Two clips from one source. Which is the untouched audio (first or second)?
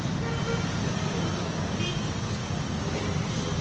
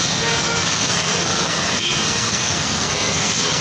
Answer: first